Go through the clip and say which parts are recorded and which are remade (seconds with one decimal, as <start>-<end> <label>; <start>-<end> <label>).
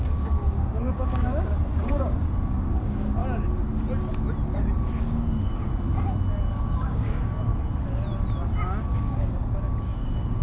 0.0-3.2 remade; 3.2-5.0 recorded; 5.0-5.7 remade; 5.7-6.5 recorded; 6.5-7.5 remade; 7.5-8.9 recorded; 8.9-10.4 remade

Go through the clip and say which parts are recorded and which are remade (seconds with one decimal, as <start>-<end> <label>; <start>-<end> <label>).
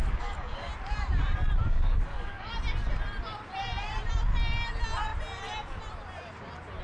0.0-0.7 remade; 0.7-1.6 recorded; 1.6-2.5 remade; 2.5-6.8 recorded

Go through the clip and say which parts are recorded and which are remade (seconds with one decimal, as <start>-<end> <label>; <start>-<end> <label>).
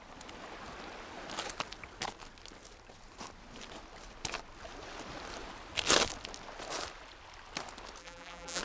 0.0-8.0 recorded; 8.0-8.6 remade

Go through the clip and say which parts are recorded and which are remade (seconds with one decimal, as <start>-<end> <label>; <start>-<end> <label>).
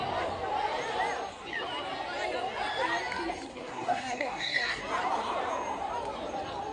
0.0-3.5 recorded; 3.5-4.8 remade; 4.8-6.7 recorded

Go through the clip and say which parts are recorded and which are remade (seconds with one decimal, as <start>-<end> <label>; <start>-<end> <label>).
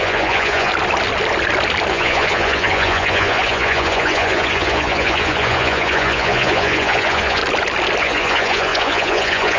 0.0-0.7 remade; 0.7-1.9 recorded; 1.9-7.4 remade; 7.4-8.0 recorded; 8.0-9.6 remade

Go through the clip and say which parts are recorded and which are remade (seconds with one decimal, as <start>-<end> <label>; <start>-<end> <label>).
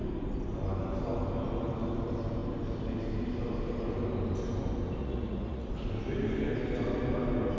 0.0-5.0 recorded; 5.0-5.7 remade; 5.7-7.6 recorded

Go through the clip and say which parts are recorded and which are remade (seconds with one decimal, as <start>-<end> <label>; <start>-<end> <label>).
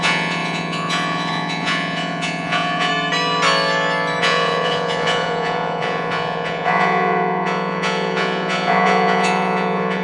0.0-2.9 remade; 2.9-4.2 recorded; 4.2-10.0 remade